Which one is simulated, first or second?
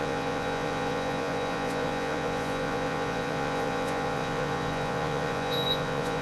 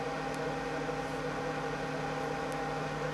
first